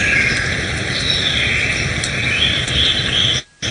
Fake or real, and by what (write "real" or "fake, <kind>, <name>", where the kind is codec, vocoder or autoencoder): real